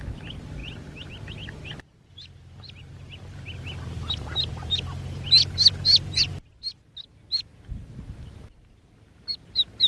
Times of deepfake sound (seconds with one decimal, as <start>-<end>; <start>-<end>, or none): none